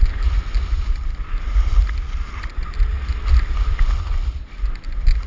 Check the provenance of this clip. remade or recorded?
recorded